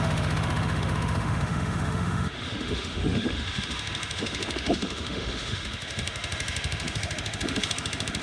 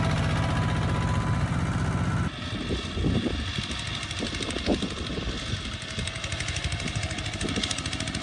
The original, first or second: second